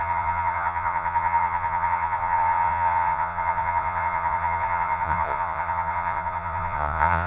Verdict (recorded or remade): remade